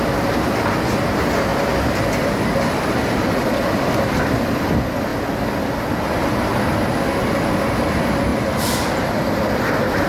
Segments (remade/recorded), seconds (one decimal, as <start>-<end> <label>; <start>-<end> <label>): 0.0-1.5 recorded; 1.5-4.6 remade; 4.6-8.3 recorded; 8.3-8.9 remade; 8.9-10.1 recorded